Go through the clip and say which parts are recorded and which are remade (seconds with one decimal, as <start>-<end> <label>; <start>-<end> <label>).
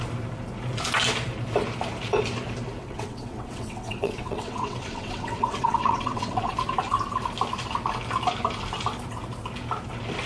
0.0-2.8 recorded; 2.8-6.5 remade; 6.5-10.3 recorded